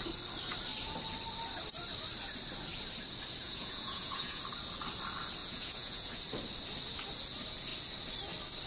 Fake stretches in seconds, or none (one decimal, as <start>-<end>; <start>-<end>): 3.4-4.4; 5.4-6.1